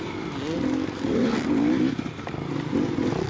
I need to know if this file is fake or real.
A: real